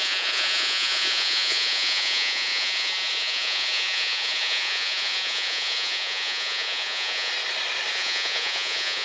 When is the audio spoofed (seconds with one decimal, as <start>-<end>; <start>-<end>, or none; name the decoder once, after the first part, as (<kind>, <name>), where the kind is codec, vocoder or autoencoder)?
0.0-7.3 (vocoder, Vocos); 7.9-9.0